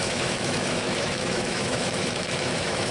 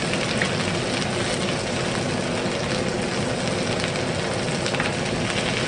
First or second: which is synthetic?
first